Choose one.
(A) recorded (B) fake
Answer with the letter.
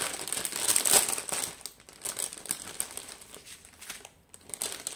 A